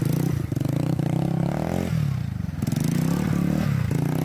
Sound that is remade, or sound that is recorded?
recorded